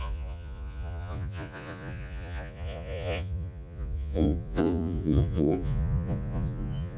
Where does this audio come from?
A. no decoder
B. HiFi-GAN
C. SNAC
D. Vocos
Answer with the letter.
D